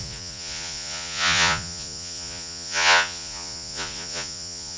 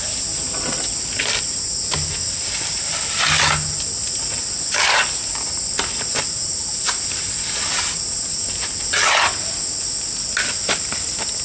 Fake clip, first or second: first